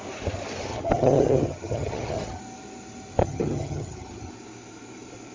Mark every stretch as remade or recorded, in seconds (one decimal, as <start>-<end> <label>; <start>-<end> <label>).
0.0-0.7 recorded; 0.7-2.4 remade; 2.4-3.2 recorded; 3.2-4.3 remade; 4.3-5.3 recorded